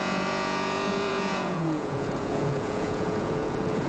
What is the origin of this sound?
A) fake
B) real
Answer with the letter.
A